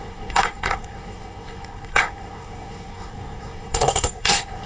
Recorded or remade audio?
remade